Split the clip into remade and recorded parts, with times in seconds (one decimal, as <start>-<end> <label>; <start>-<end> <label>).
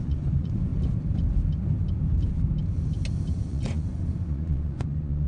0.0-0.7 remade; 0.7-3.3 recorded; 3.3-5.3 remade